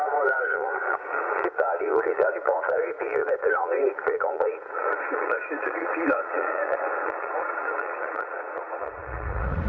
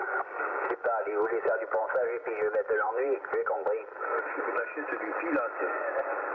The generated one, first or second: first